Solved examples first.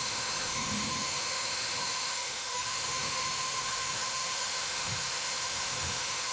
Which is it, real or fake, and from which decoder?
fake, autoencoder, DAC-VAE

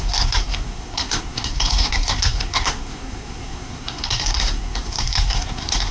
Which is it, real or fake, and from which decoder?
fake, codec, SNAC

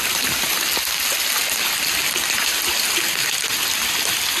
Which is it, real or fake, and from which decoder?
real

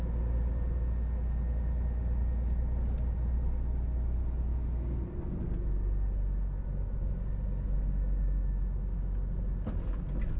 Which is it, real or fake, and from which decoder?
real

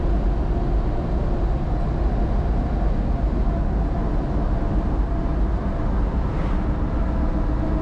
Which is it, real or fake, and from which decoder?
real